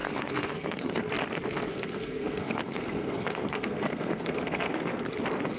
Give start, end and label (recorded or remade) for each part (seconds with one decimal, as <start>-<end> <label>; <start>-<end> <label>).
0.0-1.1 remade; 1.1-1.7 recorded; 1.7-5.1 remade; 5.1-5.6 recorded